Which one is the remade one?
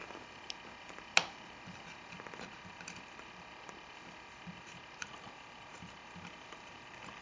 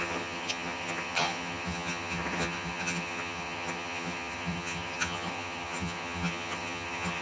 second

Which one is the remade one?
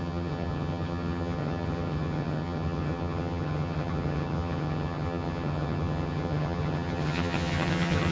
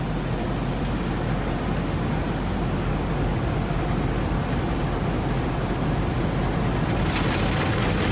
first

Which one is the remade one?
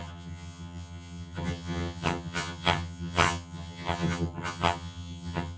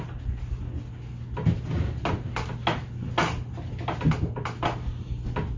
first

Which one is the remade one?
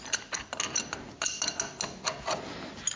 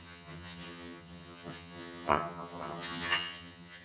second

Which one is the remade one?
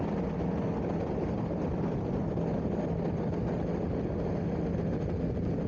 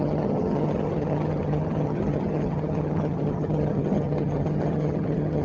second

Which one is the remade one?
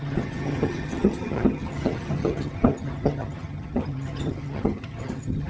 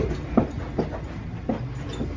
first